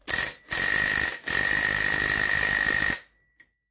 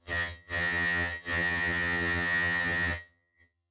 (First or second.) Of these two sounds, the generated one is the second